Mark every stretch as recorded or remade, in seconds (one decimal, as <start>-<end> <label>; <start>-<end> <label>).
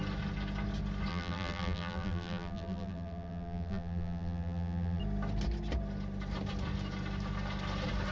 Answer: 0.0-1.1 recorded; 1.1-5.0 remade; 5.0-8.1 recorded